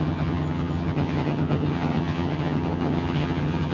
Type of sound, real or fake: fake